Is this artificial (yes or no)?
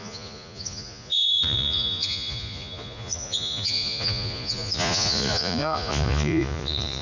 yes